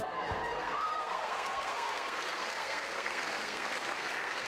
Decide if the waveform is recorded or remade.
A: remade